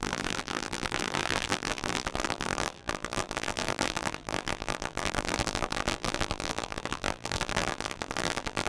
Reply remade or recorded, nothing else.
remade